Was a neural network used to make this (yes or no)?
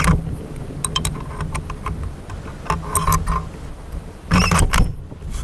no